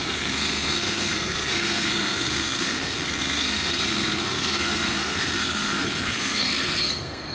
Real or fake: fake